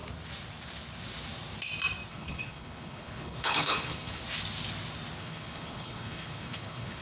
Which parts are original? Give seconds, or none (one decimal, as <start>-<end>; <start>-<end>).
0.0-2.1; 4.2-5.2